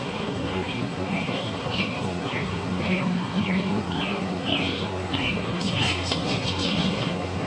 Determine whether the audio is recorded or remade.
remade